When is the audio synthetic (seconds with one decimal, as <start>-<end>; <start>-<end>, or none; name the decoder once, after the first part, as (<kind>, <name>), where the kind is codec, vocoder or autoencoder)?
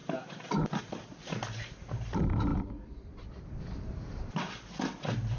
0.8-5.4 (vocoder, BigVGAN v2)